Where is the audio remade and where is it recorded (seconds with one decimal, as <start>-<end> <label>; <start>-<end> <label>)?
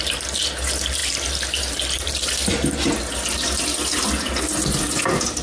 0.0-5.4 recorded